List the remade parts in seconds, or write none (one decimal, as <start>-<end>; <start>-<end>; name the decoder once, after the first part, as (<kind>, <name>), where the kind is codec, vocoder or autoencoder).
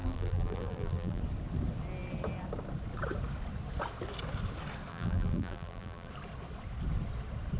0.0-1.2 (vocoder, BigVGAN v2); 4.9-6.1